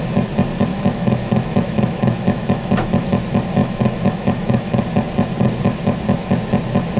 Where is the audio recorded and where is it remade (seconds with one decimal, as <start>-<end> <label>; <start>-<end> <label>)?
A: 0.0-0.7 recorded; 0.7-3.1 remade; 3.1-3.6 recorded; 3.6-4.8 remade; 4.8-7.0 recorded